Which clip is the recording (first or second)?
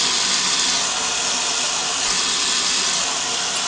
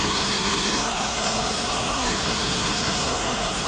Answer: first